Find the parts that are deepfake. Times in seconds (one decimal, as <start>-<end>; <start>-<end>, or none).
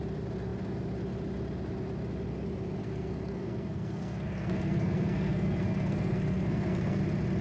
2.8-7.0